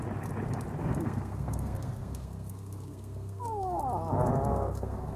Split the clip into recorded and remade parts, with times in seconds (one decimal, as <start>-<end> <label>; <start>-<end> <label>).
0.0-0.8 recorded; 0.8-3.8 remade; 3.8-4.5 recorded; 4.5-5.2 remade